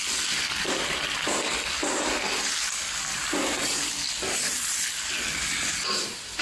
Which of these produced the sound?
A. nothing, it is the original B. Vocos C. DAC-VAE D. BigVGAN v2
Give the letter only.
A